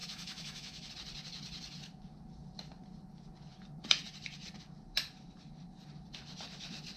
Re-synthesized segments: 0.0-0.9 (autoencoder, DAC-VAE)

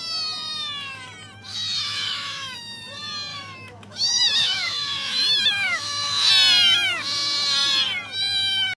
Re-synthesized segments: 1.5-2.6 (autoencoder, DAC-VAE); 3.3-6.3

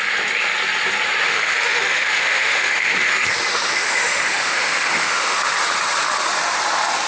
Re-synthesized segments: 1.3-3.1 (autoencoder, DAC-VAE); 3.5-5.4